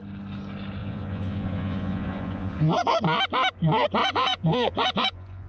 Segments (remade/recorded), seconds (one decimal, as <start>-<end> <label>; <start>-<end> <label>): 0.0-0.8 recorded; 0.8-3.0 remade; 3.0-4.0 recorded; 4.0-5.5 remade

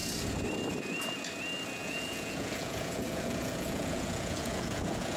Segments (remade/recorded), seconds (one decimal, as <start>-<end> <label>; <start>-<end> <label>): 0.0-1.8 recorded; 1.8-5.2 remade

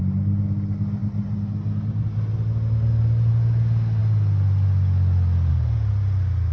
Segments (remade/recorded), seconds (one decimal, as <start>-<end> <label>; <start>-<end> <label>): 0.0-6.5 recorded

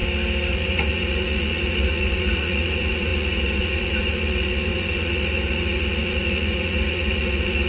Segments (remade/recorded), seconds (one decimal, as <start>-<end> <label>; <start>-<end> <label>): 0.0-0.5 recorded; 0.5-7.7 remade

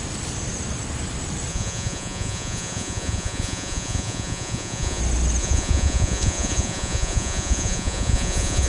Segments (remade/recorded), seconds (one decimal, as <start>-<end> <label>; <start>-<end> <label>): 0.0-1.5 recorded; 1.5-5.0 remade; 5.0-5.4 recorded; 5.4-8.7 remade

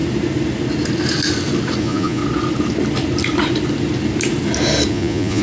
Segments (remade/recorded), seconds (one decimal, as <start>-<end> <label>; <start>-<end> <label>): 0.0-1.8 recorded; 1.8-2.2 remade; 2.2-4.9 recorded; 4.9-5.4 remade

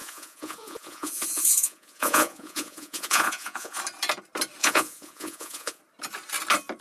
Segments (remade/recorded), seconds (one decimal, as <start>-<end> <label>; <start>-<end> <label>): 0.0-3.8 remade; 3.8-4.6 recorded; 4.6-5.8 remade; 5.8-6.8 recorded